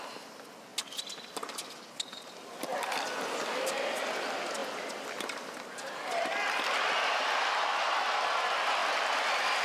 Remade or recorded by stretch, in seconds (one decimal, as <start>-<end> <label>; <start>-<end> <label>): 0.0-9.6 recorded